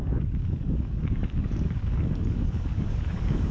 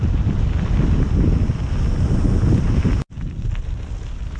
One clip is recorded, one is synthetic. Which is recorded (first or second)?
second